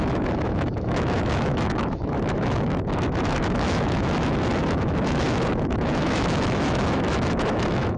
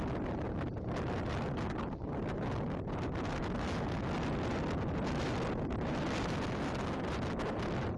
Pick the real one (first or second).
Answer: second